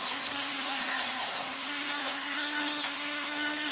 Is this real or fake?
fake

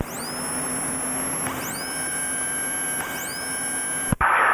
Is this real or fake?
real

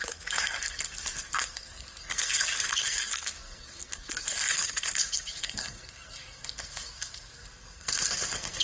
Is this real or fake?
fake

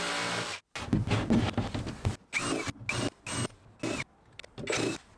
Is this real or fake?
real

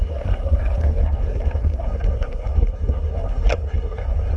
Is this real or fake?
fake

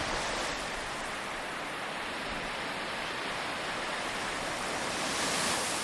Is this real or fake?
real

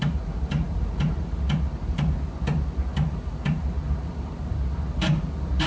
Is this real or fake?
real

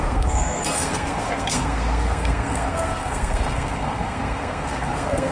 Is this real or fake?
fake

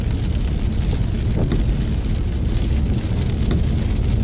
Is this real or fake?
real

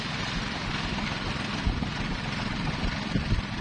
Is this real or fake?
real